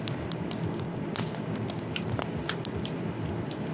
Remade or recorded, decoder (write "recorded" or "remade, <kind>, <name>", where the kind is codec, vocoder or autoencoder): recorded